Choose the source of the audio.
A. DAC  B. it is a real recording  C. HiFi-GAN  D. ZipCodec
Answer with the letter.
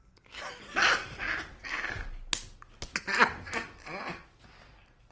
B